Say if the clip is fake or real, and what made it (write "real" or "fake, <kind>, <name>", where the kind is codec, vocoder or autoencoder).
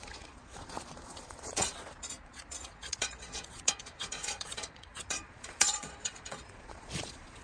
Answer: fake, vocoder, Vocos